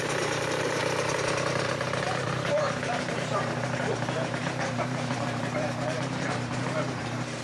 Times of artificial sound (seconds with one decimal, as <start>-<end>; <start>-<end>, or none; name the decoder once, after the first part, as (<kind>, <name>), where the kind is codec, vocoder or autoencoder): 0.0-0.8 (vocoder, BigVGAN v2); 2.1-7.4